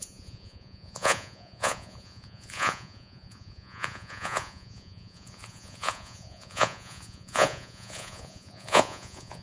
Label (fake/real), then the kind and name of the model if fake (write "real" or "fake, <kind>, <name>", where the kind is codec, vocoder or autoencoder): fake, vocoder, Vocos